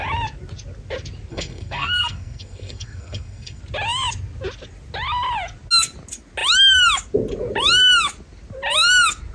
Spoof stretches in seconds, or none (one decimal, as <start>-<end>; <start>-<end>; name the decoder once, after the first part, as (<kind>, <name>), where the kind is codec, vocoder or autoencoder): 1.3-3.6 (codec, SNAC)